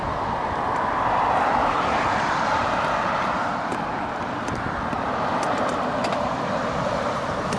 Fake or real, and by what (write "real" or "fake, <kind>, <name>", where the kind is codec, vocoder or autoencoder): fake, vocoder, BigVGAN v2